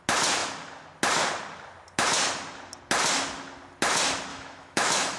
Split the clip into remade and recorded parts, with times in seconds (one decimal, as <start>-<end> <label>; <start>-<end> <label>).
0.0-4.3 recorded; 4.3-5.2 remade